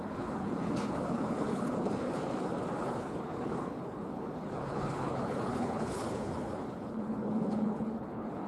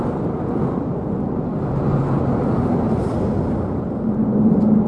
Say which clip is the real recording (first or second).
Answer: second